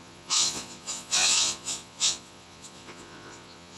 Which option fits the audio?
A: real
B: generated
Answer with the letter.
B